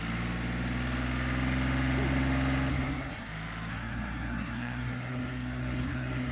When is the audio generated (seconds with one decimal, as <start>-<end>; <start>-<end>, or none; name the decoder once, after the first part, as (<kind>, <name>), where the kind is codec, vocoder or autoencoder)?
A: 2.7-3.3 (codec, SNAC); 3.7-6.3